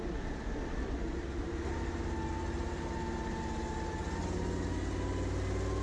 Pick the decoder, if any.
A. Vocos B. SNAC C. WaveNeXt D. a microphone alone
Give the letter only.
D